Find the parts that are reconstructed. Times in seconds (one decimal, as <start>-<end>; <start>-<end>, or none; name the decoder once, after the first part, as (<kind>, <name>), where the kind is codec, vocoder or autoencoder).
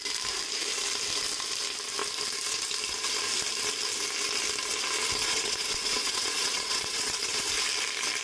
5.2-7.5 (vocoder, WaveNeXt)